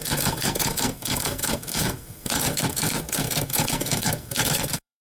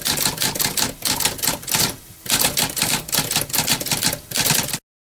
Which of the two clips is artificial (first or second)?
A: first